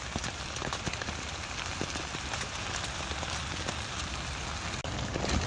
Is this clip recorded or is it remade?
recorded